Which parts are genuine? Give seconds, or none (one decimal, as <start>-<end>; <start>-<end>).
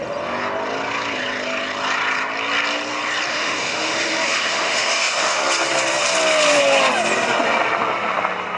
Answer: 0.0-3.3; 5.4-8.6